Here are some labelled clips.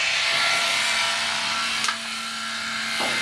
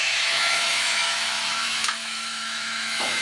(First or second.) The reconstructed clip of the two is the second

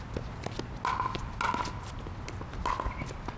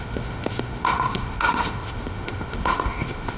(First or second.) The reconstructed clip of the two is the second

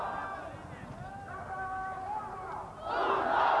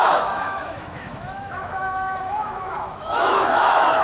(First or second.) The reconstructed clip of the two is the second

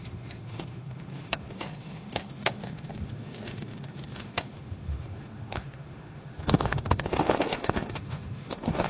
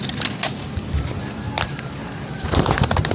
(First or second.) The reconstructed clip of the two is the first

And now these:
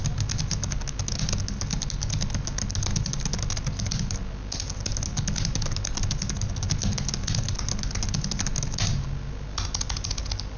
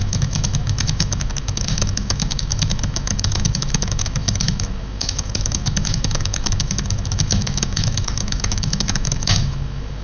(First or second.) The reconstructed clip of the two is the second